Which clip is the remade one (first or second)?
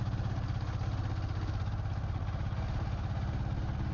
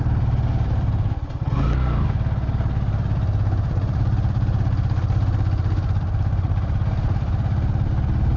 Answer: second